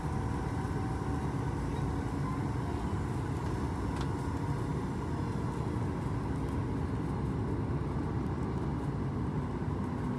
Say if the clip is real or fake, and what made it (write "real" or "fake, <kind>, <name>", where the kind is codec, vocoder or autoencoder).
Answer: real